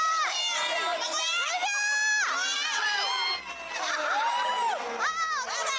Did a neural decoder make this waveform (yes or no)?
no